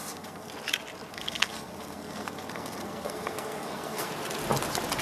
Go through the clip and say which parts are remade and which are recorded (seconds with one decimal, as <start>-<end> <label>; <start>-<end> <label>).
0.0-0.5 remade; 0.5-1.1 recorded; 1.1-4.1 remade; 4.1-5.0 recorded